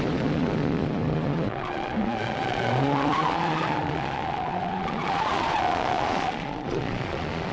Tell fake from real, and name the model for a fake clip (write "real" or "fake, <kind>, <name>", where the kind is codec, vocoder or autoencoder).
fake, vocoder, Vocos